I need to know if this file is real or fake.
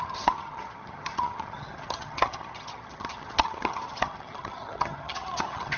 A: fake